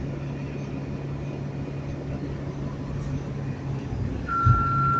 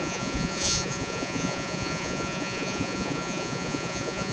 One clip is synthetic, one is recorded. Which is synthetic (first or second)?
second